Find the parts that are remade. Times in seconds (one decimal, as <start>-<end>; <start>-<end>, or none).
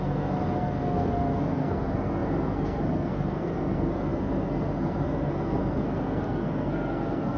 0.0-7.4